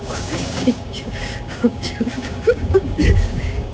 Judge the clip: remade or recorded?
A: remade